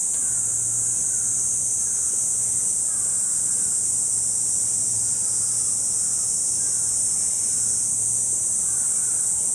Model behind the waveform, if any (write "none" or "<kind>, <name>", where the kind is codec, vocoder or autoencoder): none